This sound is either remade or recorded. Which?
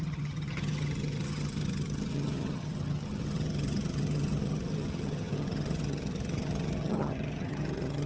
remade